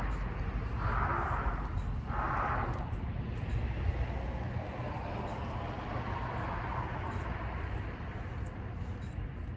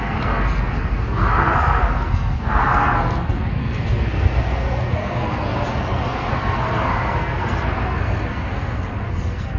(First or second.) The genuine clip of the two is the first